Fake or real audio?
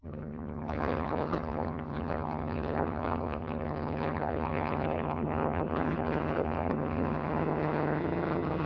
fake